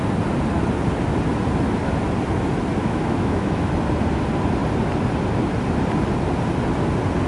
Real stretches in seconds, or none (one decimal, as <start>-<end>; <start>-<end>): 0.0-2.8; 3.7-7.3